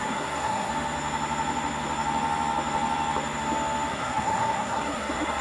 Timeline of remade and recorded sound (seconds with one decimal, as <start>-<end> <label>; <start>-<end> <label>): 0.0-0.7 remade; 0.7-3.9 recorded; 3.9-5.4 remade